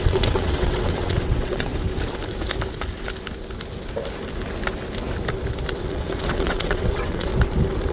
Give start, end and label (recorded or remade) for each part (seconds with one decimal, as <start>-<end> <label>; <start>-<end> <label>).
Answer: 0.0-1.7 remade; 1.7-5.7 recorded; 5.7-7.3 remade; 7.3-7.9 recorded